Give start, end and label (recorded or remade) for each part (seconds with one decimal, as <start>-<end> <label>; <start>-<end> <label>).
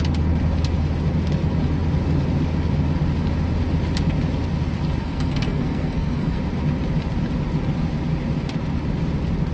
0.0-5.0 recorded; 5.0-6.4 remade; 6.4-9.5 recorded